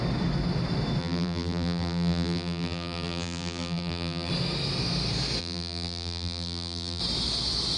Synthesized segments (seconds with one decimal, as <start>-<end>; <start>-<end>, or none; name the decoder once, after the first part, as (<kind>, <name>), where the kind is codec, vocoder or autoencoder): 1.0-4.3 (vocoder, BigVGAN v2); 5.4-7.0